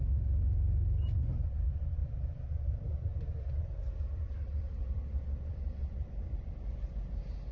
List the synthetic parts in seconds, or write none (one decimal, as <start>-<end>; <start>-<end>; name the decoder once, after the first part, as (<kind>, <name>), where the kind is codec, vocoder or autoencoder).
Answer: 2.0-6.5 (vocoder, BigVGAN v2)